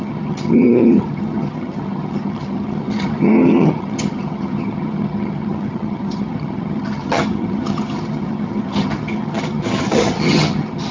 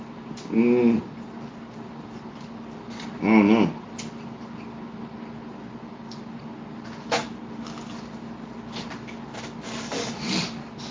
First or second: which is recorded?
second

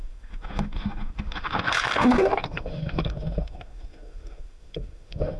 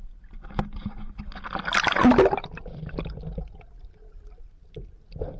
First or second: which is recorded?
second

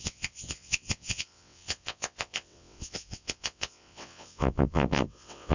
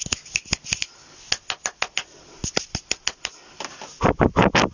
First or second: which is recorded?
second